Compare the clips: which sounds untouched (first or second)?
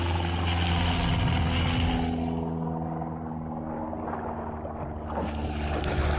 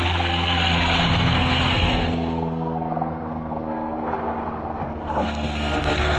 first